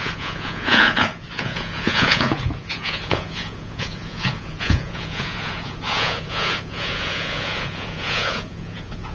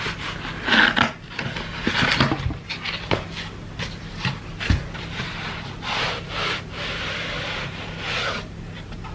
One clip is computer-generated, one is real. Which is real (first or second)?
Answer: second